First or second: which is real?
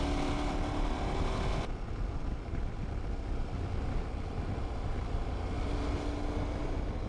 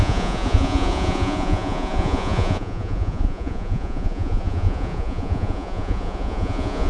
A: first